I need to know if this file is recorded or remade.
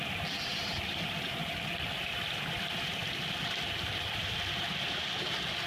recorded